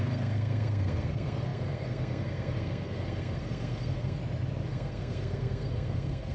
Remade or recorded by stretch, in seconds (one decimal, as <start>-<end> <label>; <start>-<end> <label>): 0.0-4.2 remade; 4.2-4.7 recorded; 4.7-6.3 remade